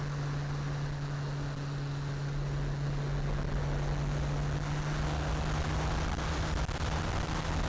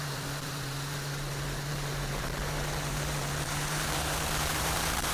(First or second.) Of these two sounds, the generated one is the second